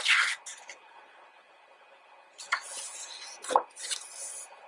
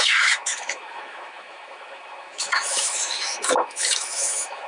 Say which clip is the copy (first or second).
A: second